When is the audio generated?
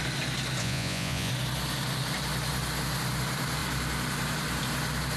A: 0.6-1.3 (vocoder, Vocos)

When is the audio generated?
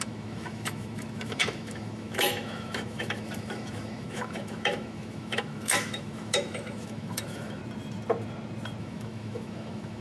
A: 0.0-7.6 (autoencoder, DAC-VAE); 8.8-10.0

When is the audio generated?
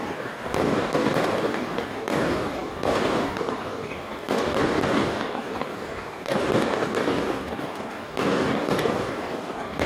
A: 0.0-9.9 (codec, DAC)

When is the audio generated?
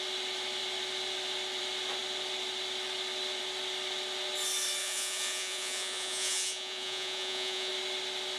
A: 4.8-7.7 (vocoder, Vocos)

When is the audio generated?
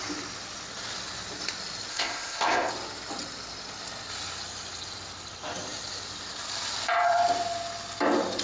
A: 1.9-2.7 (codec, ZipCodec)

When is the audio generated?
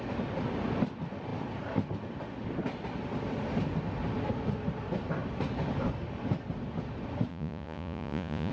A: 7.3-8.5 (vocoder, Vocos)